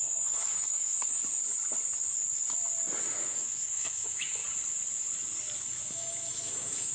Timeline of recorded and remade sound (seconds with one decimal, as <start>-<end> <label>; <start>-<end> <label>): 0.0-1.2 remade; 1.2-3.0 recorded; 3.0-4.4 remade; 4.4-5.6 recorded; 5.6-6.9 remade